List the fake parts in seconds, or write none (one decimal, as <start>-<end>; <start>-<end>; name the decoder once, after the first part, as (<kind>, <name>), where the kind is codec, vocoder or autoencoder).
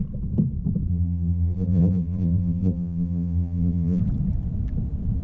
0.9-4.0 (vocoder, BigVGAN v2)